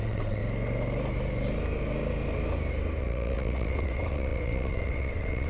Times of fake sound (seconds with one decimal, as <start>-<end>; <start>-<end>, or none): 0.0-0.4; 3.0-5.5